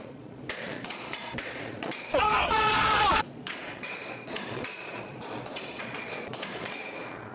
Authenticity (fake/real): fake